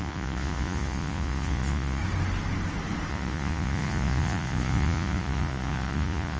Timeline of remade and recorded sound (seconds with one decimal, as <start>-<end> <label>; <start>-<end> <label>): 0.0-2.0 remade; 2.0-3.1 recorded; 3.1-6.4 remade